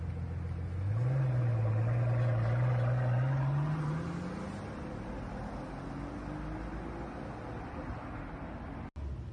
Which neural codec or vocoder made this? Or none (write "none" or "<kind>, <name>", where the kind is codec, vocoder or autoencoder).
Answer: none